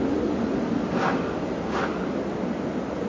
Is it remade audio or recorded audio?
recorded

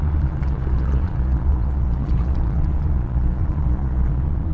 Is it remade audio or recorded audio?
remade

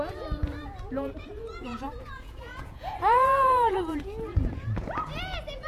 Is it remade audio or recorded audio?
remade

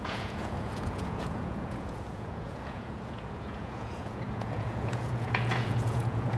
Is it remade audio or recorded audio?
remade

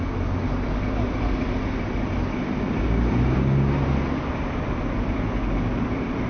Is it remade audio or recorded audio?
recorded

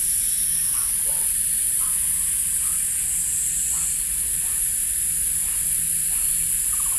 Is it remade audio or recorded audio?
recorded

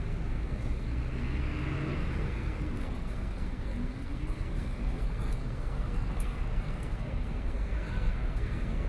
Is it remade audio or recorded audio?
remade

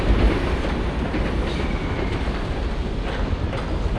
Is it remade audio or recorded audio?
recorded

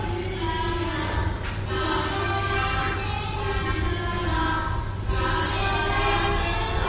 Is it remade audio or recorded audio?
recorded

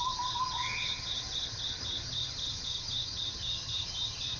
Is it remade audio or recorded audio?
remade